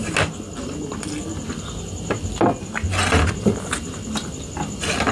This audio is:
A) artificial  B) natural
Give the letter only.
B